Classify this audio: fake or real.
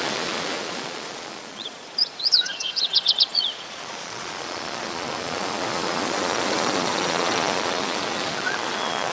fake